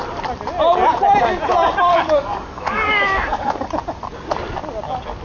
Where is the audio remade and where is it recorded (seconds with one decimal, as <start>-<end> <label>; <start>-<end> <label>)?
0.0-1.9 recorded; 1.9-3.7 remade; 3.7-5.2 recorded